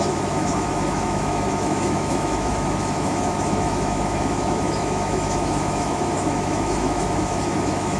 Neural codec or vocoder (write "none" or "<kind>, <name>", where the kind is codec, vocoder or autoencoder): autoencoder, DAC-VAE